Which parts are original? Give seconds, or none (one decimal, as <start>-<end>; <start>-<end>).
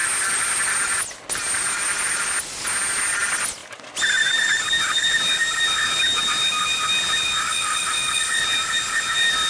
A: 0.0-7.5; 8.4-9.5